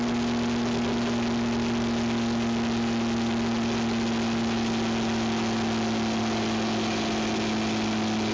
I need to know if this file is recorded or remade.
recorded